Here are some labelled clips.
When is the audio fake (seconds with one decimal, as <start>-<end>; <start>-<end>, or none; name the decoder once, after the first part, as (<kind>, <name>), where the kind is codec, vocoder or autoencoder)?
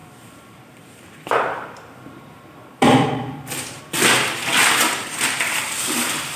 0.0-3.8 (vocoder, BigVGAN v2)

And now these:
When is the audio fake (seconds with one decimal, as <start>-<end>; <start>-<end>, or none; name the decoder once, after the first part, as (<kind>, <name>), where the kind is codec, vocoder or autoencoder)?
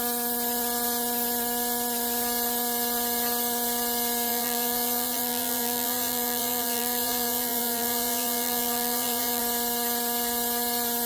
4.3-9.4 (vocoder, BigVGAN v2)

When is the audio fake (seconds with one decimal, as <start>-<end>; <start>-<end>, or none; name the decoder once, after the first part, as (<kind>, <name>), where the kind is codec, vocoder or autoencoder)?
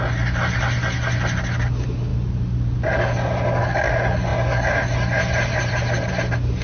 none